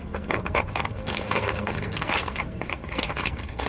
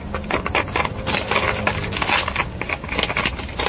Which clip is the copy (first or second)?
first